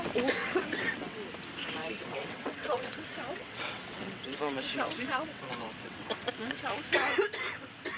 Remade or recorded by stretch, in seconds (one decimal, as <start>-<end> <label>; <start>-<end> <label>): 0.0-0.4 recorded; 0.4-1.2 remade; 1.2-1.8 recorded; 1.8-6.6 remade; 6.6-8.0 recorded

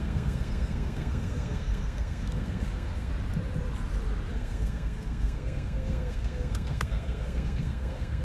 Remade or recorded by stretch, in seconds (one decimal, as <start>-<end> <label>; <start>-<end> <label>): 0.0-3.1 remade; 3.1-4.3 recorded; 4.3-8.2 remade